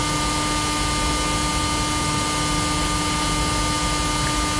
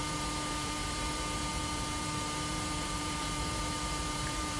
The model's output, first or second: second